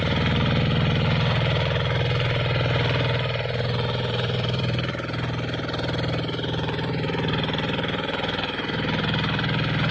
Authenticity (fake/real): fake